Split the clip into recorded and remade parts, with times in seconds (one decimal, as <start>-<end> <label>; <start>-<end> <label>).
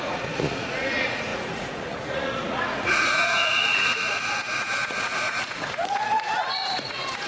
0.0-7.3 remade